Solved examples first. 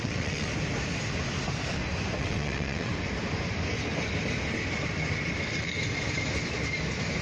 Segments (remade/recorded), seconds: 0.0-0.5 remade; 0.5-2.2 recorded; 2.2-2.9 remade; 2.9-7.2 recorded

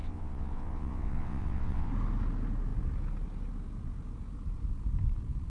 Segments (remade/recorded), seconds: 0.0-1.9 remade; 1.9-5.5 recorded